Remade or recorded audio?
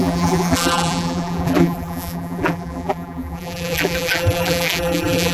remade